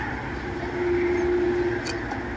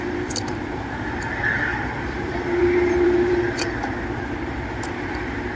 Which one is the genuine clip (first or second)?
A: first